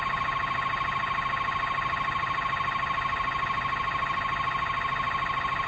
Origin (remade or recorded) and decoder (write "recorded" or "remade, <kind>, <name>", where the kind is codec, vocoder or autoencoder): recorded